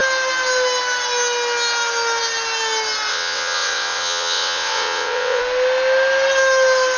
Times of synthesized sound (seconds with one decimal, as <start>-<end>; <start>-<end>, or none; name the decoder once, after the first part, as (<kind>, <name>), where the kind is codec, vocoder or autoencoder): 3.1-5.4 (vocoder, WaveNeXt)